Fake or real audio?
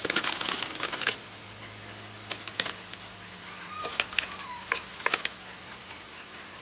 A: real